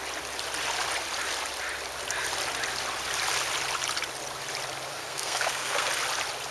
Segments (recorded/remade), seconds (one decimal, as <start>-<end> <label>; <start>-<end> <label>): 0.0-4.9 recorded; 4.9-5.9 remade; 5.9-6.5 recorded